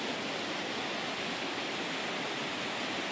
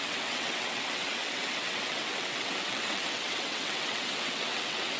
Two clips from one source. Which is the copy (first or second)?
second